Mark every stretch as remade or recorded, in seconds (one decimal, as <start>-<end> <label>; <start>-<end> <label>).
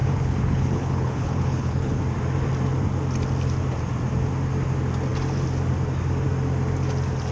0.0-2.0 remade; 2.0-7.3 recorded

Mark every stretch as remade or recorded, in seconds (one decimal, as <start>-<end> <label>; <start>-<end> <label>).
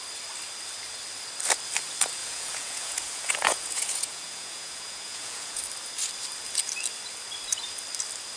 0.0-2.2 recorded; 2.2-5.6 remade; 5.6-8.4 recorded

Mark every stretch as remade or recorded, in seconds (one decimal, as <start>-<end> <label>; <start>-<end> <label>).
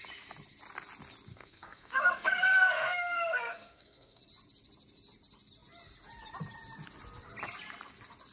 0.0-1.3 recorded; 1.3-4.2 remade; 4.2-8.3 recorded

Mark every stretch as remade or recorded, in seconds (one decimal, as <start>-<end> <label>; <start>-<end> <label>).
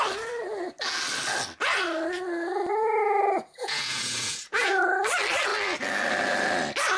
0.0-2.7 recorded; 2.7-4.8 remade; 4.8-7.0 recorded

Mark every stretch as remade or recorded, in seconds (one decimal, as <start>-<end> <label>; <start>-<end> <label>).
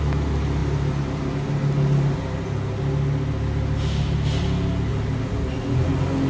0.0-6.3 recorded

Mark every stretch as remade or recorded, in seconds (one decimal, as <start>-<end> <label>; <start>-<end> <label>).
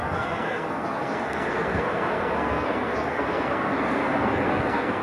0.0-5.0 remade